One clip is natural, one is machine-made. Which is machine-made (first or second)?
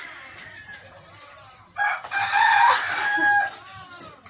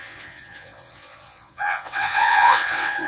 second